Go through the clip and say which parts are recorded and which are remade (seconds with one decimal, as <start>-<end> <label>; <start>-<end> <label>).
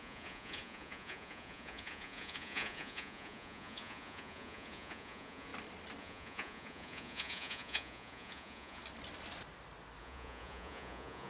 0.0-5.5 remade; 5.5-6.0 recorded; 6.0-8.8 remade; 8.8-10.0 recorded; 10.0-11.3 remade